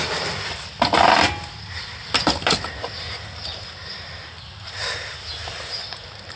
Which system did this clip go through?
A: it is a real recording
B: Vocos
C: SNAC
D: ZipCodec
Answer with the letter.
A